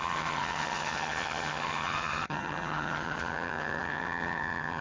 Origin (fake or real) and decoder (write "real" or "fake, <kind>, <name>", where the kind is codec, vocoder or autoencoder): fake, vocoder, HiFi-GAN